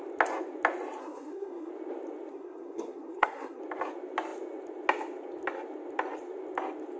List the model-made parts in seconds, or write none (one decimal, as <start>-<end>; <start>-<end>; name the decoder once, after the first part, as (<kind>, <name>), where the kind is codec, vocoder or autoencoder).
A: 1.0-1.7 (codec, SNAC); 2.3-3.6